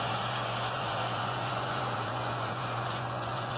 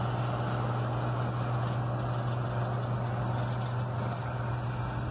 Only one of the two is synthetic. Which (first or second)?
first